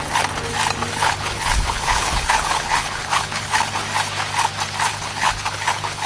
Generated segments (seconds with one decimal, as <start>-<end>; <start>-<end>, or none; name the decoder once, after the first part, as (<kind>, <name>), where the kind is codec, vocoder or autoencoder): 0.9-3.7 (codec, HILCodec); 4.9-6.1